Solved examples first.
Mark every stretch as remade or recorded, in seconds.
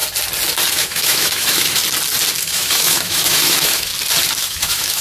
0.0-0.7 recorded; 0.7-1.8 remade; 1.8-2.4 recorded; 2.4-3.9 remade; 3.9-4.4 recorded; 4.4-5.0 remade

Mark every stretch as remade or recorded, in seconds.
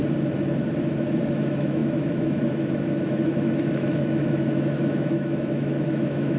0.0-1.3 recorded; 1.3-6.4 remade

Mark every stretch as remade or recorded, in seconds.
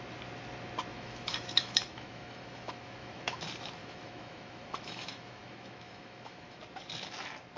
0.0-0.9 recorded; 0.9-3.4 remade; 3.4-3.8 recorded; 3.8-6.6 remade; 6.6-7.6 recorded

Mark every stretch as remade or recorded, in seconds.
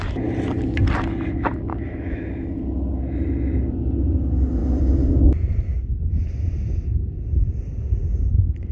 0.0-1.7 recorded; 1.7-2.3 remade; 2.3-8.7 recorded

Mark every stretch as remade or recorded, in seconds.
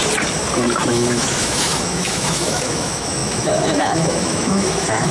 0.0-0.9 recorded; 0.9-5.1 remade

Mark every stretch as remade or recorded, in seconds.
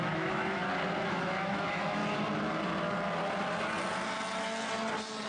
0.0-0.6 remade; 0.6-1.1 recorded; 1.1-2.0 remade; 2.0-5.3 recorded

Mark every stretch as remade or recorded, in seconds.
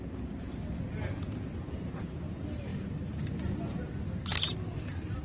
0.0-5.2 recorded